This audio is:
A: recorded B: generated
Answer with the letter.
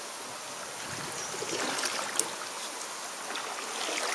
A